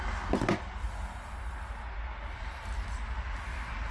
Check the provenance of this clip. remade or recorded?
recorded